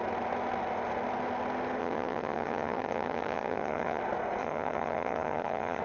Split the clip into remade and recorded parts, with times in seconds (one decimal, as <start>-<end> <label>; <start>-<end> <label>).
0.0-1.8 recorded; 1.8-4.0 remade; 4.0-4.4 recorded; 4.4-5.8 remade